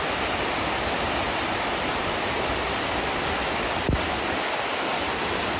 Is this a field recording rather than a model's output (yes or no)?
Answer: yes